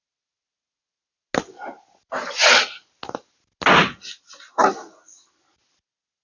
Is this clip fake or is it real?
real